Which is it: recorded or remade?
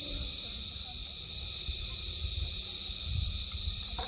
recorded